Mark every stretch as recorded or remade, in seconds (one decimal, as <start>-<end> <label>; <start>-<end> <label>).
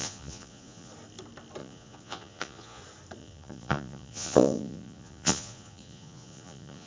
0.0-0.9 remade; 0.9-1.6 recorded; 1.6-2.8 remade; 2.8-3.2 recorded; 3.2-6.9 remade